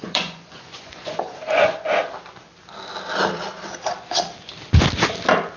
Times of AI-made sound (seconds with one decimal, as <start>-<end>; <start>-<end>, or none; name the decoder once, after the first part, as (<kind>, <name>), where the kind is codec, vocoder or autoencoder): 0.0-2.0 (vocoder, Vocos)